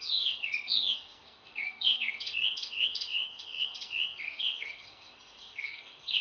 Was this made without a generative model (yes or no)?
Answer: no